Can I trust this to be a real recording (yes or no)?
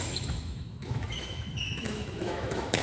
no